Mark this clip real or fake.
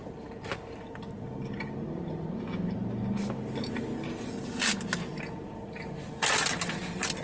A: real